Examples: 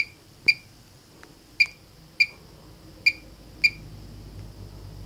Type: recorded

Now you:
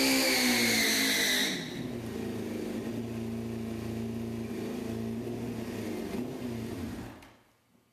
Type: recorded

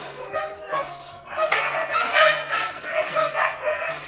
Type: remade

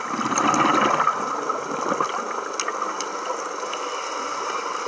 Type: recorded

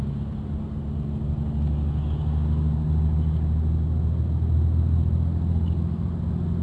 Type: recorded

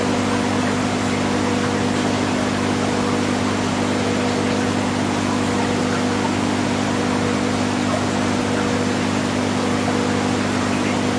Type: recorded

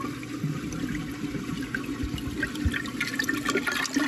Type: recorded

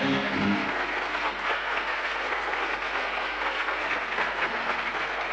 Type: remade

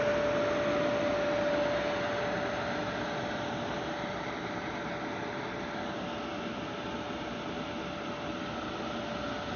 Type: recorded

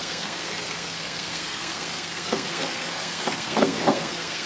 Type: remade